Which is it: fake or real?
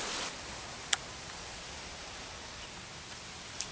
real